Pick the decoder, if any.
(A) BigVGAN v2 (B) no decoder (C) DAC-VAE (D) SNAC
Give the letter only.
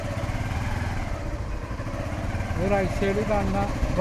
B